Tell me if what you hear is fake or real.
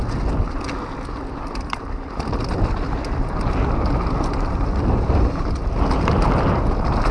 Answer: real